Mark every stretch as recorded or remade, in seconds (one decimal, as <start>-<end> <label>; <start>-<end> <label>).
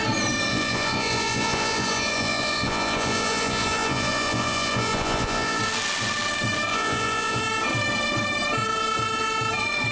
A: 0.0-0.5 recorded; 0.5-5.6 remade; 5.6-6.7 recorded; 6.7-7.4 remade; 7.4-9.9 recorded